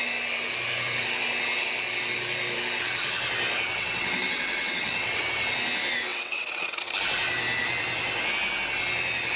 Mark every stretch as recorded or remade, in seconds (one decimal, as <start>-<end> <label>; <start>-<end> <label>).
0.0-3.7 recorded; 3.7-5.2 remade; 5.2-6.1 recorded; 6.1-6.9 remade; 6.9-9.4 recorded